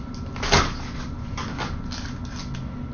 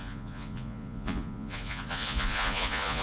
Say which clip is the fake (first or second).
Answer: second